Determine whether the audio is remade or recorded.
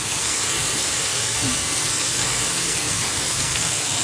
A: remade